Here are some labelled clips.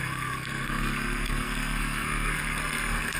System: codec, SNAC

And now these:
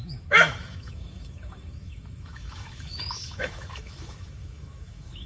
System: autoencoder, DAC-VAE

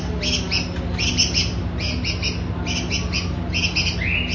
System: none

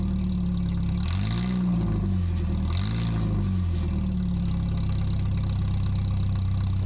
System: none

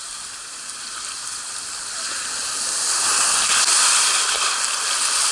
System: none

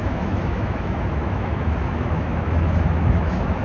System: autoencoder, DAC-VAE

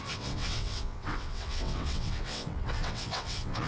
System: vocoder, WaveNeXt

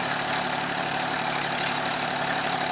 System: vocoder, BigVGAN v2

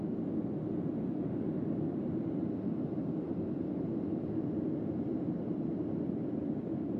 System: none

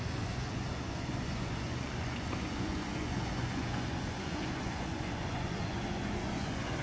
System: vocoder, Vocos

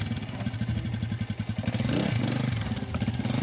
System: none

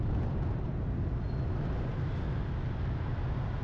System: none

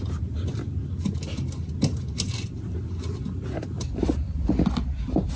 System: none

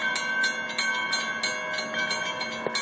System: none